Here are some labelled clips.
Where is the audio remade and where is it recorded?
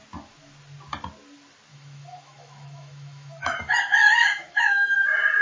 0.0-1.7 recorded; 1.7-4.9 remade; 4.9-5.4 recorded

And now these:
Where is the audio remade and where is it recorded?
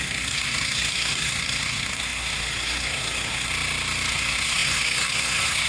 0.0-3.5 remade; 3.5-4.1 recorded; 4.1-5.7 remade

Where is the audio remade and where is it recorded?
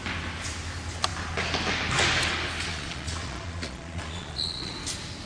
0.0-2.7 recorded; 2.7-4.7 remade; 4.7-5.3 recorded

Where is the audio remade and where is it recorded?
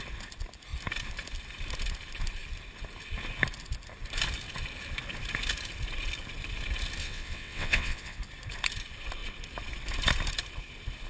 0.0-7.0 recorded; 7.0-8.2 remade; 8.2-11.1 recorded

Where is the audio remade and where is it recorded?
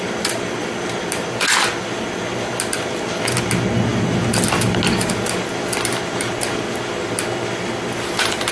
0.0-8.5 recorded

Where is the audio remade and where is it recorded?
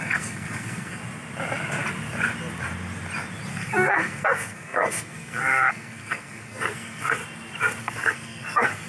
0.0-1.0 remade; 1.0-3.5 recorded; 3.5-7.2 remade; 7.2-7.8 recorded; 7.8-8.9 remade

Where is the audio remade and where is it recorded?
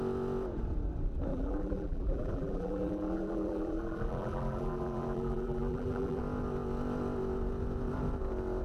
0.0-1.3 recorded; 1.3-6.2 remade; 6.2-8.6 recorded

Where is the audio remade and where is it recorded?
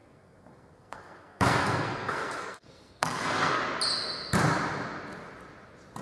0.0-3.6 remade; 3.6-6.0 recorded